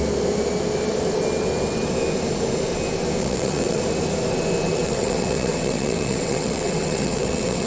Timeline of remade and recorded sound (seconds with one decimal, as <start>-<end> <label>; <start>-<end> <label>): 0.0-3.2 recorded; 3.2-3.8 remade; 3.8-4.7 recorded; 4.7-7.7 remade